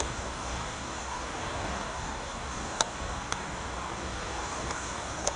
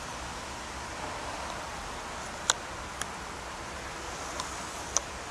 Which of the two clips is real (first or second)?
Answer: second